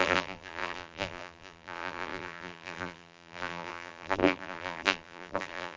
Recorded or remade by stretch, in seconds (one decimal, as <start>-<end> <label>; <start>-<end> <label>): 0.0-5.8 remade